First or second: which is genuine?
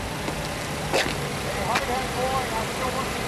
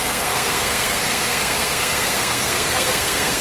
first